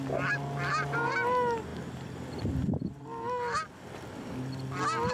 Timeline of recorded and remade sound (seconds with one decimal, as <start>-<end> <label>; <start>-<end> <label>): 0.0-5.1 recorded